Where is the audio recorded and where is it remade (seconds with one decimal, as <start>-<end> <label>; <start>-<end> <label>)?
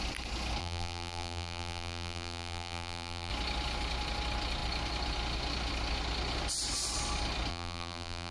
0.0-0.6 recorded; 0.6-3.3 remade; 3.3-7.5 recorded; 7.5-8.3 remade